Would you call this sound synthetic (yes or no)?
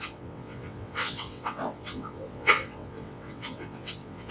yes